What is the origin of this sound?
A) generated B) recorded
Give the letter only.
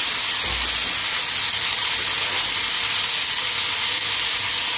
B